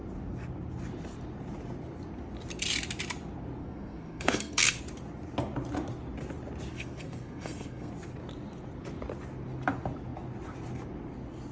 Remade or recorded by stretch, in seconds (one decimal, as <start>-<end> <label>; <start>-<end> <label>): 0.0-3.6 recorded; 3.6-4.8 remade; 4.8-6.7 recorded; 6.7-7.9 remade; 7.9-11.5 recorded